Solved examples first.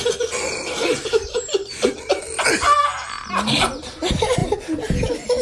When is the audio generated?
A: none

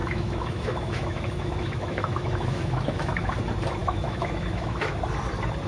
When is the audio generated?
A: 0.0-3.4 (autoencoder, DAC-VAE); 3.8-5.0

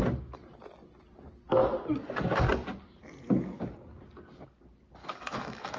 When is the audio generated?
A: 5.0-5.8 (autoencoder, DAC-VAE)

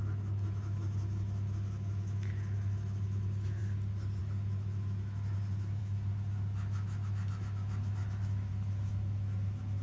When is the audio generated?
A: 0.0-3.6 (autoencoder, DAC-VAE); 4.2-9.8

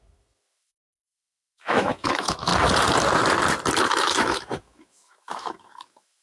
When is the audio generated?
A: 0.0-2.5 (autoencoder, DAC-VAE); 3.8-6.2

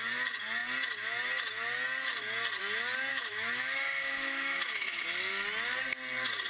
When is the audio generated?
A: 3.1-5.1 (autoencoder, DAC-VAE)

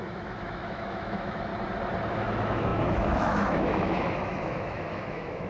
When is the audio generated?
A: 0.0-1.5 (autoencoder, DAC-VAE); 2.1-5.5